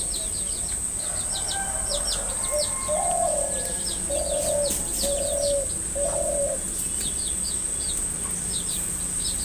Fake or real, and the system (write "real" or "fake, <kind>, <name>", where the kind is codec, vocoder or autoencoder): real